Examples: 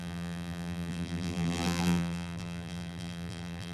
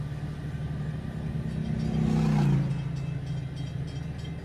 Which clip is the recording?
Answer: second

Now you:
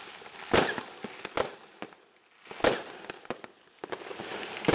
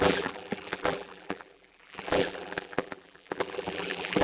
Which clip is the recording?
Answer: first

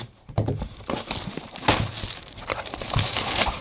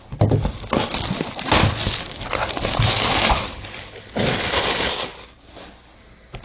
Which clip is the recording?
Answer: second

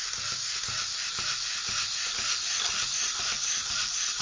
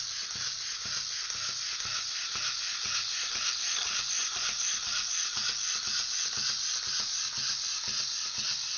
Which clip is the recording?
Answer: second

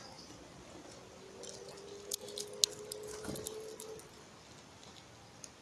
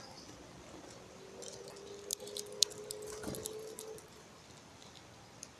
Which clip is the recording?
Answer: first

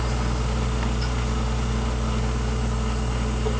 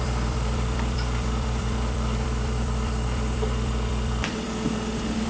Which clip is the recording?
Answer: first